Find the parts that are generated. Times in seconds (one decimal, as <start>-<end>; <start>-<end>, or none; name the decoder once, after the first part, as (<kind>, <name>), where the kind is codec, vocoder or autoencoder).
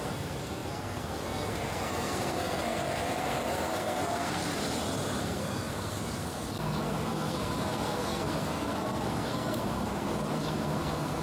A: 0.0-4.4 (codec, SNAC); 5.2-11.2